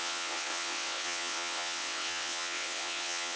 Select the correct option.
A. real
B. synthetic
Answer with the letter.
B